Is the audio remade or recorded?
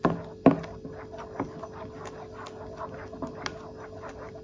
recorded